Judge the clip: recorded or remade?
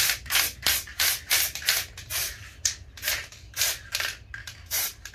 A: recorded